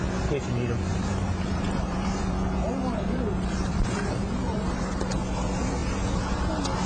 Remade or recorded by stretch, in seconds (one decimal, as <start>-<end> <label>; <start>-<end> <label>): 0.0-0.9 recorded; 0.9-5.0 remade; 5.0-5.8 recorded; 5.8-6.4 remade; 6.4-6.9 recorded